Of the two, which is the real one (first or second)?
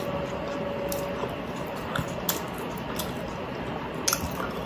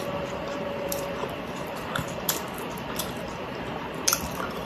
first